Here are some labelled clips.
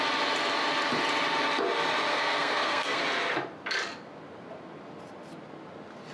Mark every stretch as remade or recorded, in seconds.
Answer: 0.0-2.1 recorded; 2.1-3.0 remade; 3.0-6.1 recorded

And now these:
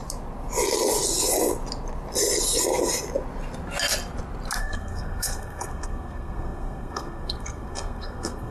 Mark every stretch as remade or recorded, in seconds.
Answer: 0.0-4.6 recorded; 4.6-8.5 remade